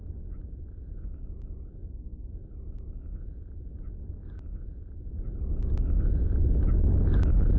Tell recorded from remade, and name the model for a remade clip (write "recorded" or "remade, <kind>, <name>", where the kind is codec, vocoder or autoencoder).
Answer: recorded